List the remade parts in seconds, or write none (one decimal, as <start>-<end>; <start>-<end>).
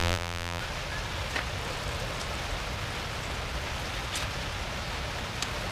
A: 0.0-0.6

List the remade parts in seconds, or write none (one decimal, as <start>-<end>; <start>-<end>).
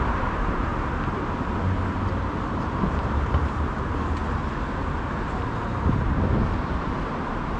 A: 0.0-0.7; 2.5-4.2; 5.1-7.6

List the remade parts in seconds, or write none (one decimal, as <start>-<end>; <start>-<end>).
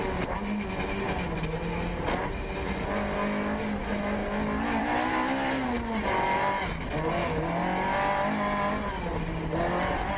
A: none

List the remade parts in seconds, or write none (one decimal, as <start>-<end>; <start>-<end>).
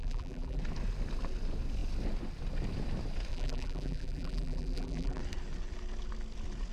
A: 0.0-0.6; 3.3-5.2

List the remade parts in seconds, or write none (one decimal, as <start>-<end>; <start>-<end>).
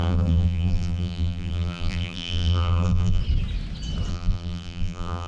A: 0.0-3.2; 4.1-5.3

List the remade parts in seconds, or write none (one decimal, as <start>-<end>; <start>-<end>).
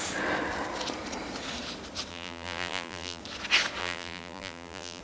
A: 2.1-3.2; 3.8-5.0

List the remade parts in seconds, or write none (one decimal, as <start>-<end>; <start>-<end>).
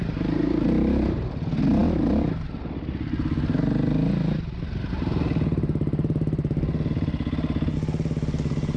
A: none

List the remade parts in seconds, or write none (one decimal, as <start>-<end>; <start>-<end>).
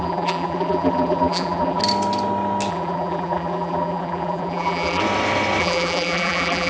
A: 0.0-1.8; 2.7-5.0; 5.6-6.7